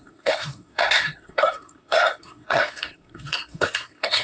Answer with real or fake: fake